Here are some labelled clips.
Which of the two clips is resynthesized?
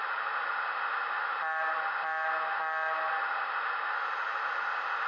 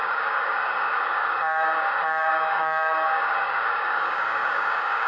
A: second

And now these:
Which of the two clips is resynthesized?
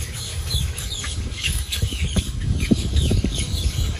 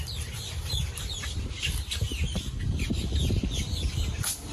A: first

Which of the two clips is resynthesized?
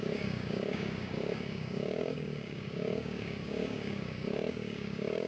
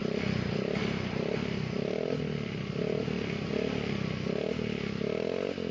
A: first